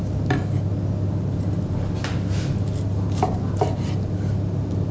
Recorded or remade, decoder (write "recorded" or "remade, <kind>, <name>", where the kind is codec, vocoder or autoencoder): recorded